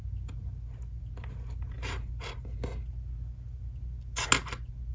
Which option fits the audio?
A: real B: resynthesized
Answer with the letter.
A